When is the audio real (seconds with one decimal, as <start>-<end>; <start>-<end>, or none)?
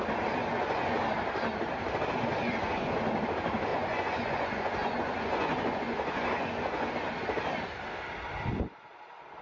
0.0-0.4; 1.0-2.3; 3.0-3.7; 6.9-9.4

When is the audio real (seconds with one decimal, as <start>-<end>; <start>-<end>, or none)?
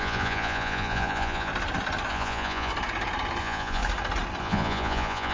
1.5-2.1; 2.7-3.4; 3.8-4.4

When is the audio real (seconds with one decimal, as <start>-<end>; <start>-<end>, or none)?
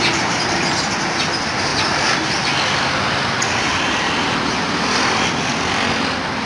0.0-6.5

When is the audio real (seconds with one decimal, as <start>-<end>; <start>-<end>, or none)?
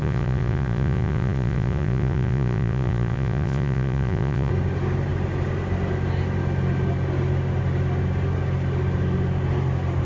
4.5-10.1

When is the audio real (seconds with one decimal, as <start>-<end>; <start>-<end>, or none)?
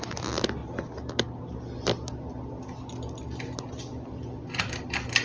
0.0-5.2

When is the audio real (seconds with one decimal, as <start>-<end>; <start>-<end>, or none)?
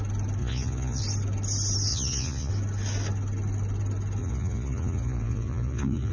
0.0-0.4; 1.0-1.9; 2.5-4.2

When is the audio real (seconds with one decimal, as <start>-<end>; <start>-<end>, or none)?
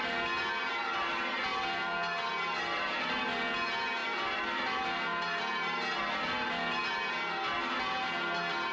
0.0-8.7